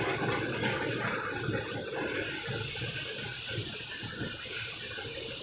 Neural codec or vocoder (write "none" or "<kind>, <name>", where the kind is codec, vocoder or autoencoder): none